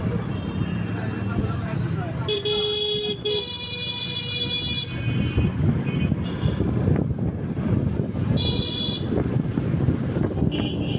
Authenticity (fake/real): real